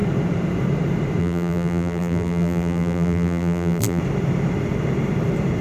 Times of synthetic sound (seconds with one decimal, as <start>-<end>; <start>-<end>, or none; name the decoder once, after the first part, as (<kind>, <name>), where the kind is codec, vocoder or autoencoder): 1.2-4.0 (vocoder, BigVGAN v2)